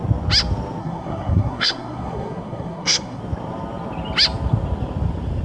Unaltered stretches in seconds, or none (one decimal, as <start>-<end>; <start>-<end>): 0.0-0.8; 3.2-5.4